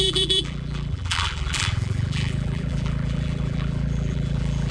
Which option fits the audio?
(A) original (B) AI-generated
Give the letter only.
B